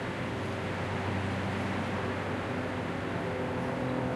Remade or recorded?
recorded